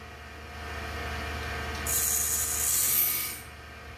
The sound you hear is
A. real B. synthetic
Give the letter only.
A